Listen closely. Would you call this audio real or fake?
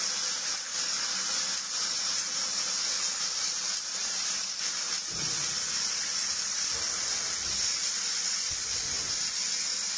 real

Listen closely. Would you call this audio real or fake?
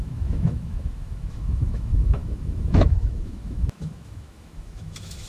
fake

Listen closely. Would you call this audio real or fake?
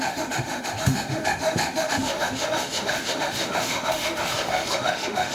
fake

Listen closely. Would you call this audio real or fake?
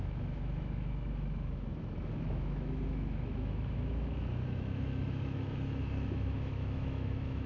fake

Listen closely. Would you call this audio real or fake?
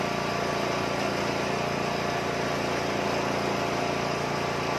real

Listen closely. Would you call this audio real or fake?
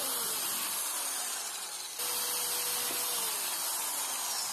real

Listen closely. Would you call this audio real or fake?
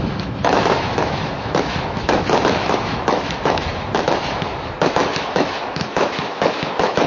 fake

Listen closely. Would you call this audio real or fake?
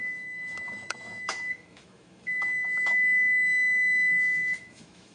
fake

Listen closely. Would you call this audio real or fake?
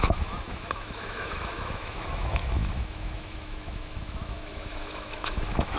fake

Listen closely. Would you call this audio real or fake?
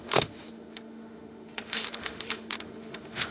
fake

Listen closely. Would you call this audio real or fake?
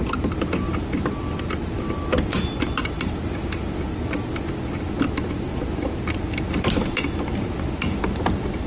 real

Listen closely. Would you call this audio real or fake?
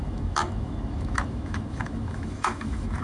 fake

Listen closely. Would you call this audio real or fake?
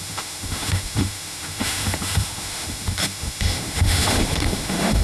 fake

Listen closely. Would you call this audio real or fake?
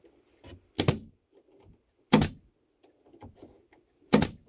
real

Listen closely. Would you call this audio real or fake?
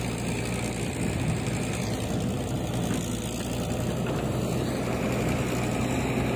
real